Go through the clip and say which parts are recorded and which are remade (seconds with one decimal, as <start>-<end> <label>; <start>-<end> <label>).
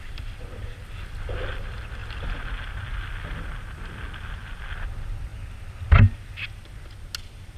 0.0-7.6 recorded